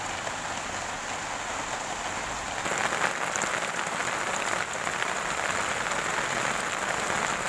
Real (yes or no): yes